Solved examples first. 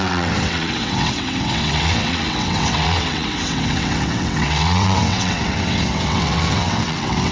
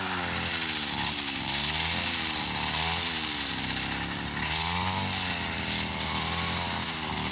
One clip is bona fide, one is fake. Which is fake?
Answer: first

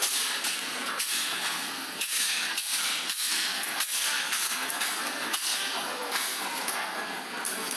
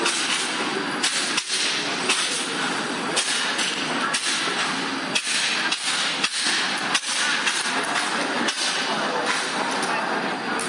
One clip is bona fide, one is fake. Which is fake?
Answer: first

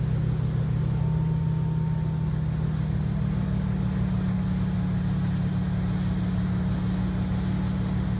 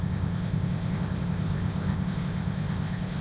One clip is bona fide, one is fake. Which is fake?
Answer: second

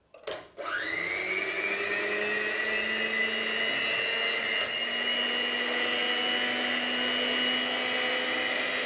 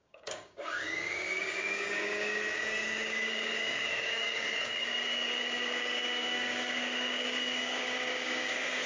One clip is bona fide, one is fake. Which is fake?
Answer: second